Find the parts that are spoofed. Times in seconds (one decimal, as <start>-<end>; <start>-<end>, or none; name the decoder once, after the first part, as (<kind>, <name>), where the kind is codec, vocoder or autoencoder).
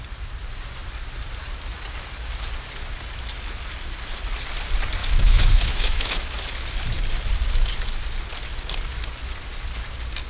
5.0-6.2 (autoencoder, DAC-VAE)